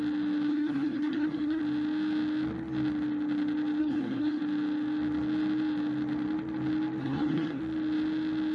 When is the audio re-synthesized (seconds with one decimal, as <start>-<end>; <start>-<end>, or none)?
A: 0.5-1.6; 3.8-4.4; 7.0-7.6